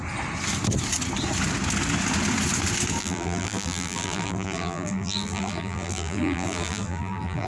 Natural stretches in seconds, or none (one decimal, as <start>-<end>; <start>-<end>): 0.0-3.0